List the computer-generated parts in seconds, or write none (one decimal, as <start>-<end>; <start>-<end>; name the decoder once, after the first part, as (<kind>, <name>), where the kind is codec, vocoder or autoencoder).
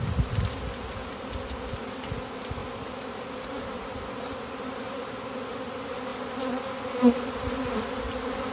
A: none